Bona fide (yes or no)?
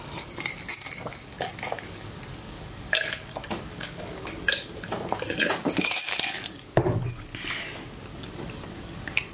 no